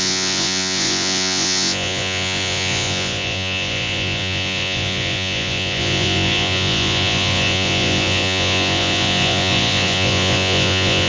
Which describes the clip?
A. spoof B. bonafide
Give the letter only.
A